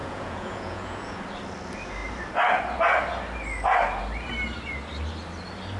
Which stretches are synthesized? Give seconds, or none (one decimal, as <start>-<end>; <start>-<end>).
0.0-1.2